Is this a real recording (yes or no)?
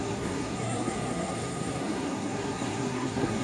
no